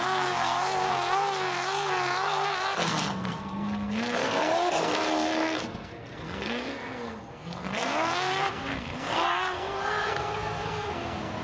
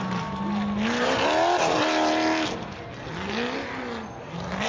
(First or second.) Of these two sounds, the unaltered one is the second